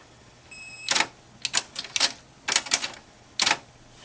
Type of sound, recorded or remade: recorded